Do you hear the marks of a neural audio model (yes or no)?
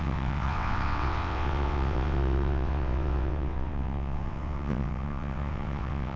yes